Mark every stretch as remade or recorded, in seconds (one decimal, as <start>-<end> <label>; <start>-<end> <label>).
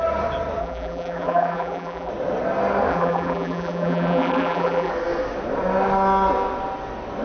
0.0-0.6 recorded; 0.6-2.1 remade; 2.1-2.9 recorded; 2.9-4.9 remade; 4.9-7.2 recorded